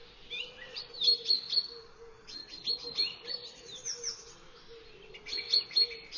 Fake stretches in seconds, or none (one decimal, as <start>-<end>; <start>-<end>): none